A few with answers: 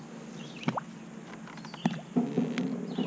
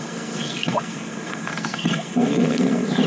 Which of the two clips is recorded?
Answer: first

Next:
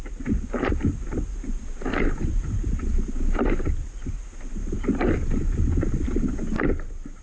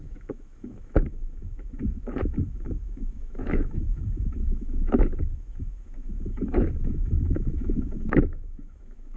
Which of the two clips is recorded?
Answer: first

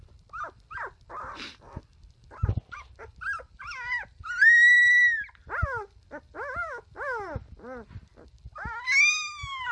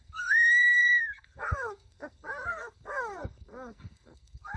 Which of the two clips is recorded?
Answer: first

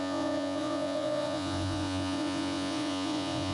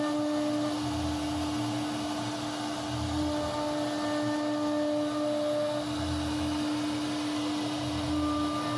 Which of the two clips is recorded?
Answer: second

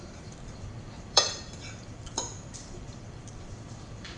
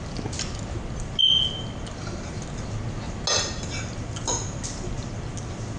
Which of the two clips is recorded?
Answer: second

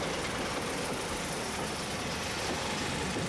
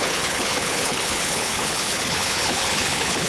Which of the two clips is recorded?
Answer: first